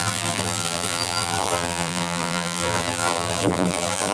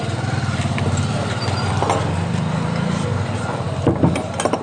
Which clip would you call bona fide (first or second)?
second